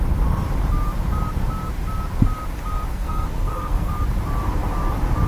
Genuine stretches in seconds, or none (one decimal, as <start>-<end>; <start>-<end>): 0.0-2.9; 3.9-5.3